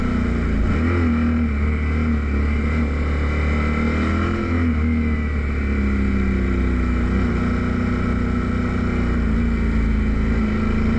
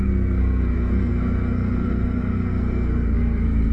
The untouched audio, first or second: first